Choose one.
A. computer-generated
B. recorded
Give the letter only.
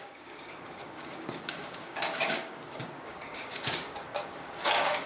A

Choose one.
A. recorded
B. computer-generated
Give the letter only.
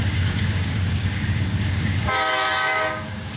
B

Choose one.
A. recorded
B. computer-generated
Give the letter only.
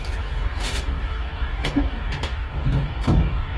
B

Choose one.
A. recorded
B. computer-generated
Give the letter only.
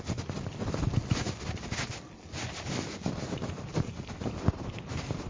A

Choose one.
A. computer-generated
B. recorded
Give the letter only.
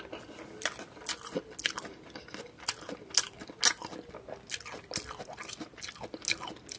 B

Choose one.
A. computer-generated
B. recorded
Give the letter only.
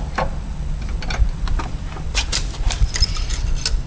B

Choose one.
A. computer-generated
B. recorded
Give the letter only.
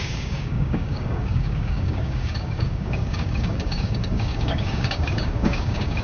A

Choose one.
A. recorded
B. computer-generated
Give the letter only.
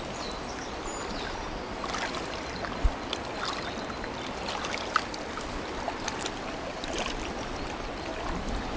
A